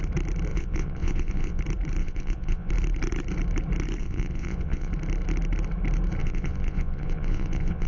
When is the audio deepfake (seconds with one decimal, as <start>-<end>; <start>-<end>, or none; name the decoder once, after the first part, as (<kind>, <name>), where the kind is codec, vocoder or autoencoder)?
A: 0.5-1.6 (vocoder, Vocos); 2.0-2.7; 4.0-4.9; 6.2-7.9